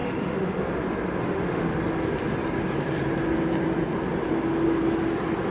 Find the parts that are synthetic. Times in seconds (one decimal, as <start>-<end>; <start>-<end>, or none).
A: 0.0-0.7; 1.2-1.8